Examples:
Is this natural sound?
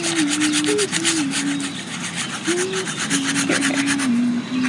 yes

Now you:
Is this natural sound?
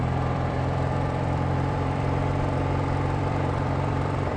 no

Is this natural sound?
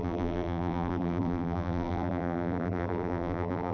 no